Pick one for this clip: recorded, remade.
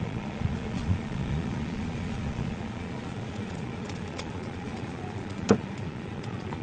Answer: remade